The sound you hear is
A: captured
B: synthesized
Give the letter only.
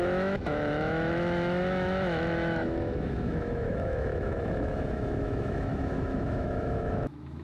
B